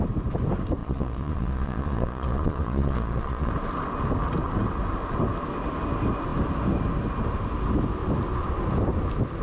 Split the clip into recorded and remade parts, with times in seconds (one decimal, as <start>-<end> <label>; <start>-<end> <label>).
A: 0.0-0.8 recorded; 0.8-3.5 remade; 3.5-9.4 recorded